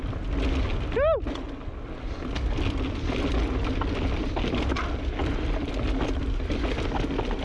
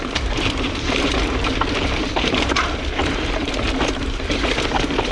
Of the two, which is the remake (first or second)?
second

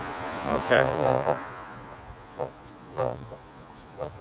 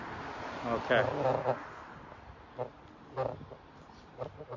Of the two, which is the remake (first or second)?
first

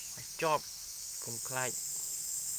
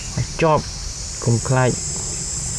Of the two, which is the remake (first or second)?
first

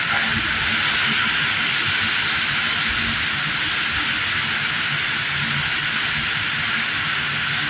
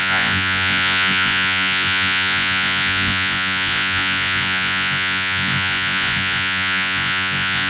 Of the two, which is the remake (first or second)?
second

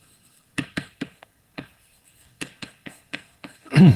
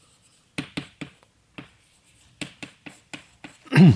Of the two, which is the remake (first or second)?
first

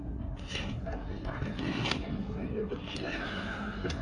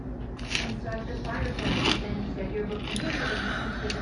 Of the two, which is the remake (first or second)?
first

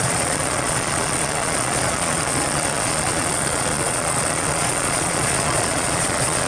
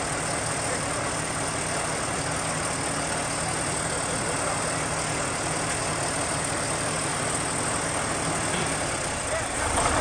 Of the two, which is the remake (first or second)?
first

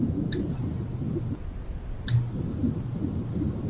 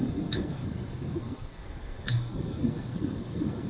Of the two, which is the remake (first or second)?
second